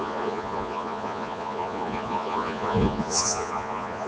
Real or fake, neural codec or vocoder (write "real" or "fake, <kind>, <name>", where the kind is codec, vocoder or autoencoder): fake, vocoder, Vocos